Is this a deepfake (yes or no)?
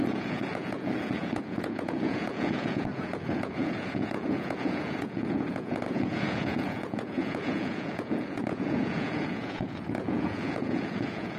yes